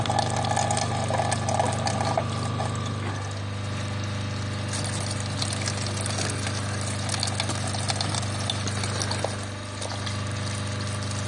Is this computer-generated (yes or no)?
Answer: no